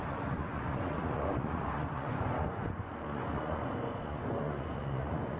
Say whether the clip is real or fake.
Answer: fake